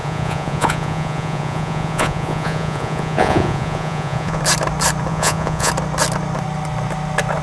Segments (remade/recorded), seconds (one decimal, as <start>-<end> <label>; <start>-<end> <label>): 0.0-4.4 remade; 4.4-5.1 recorded; 5.1-5.7 remade; 5.7-7.4 recorded